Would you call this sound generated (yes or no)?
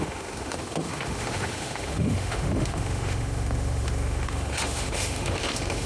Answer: yes